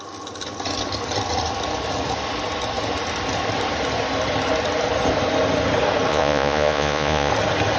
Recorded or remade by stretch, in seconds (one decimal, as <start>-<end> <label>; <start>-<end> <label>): 0.0-6.1 recorded; 6.1-7.3 remade; 7.3-7.8 recorded